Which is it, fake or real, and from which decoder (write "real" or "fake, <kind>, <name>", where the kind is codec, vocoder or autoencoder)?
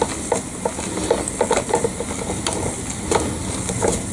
real